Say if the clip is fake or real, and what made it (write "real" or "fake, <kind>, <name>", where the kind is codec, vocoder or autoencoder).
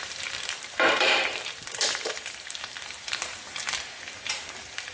fake, vocoder, BigVGAN v2